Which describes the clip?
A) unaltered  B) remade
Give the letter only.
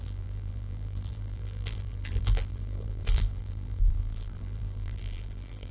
B